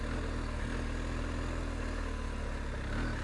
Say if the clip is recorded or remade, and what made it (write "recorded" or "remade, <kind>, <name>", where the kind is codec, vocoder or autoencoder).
recorded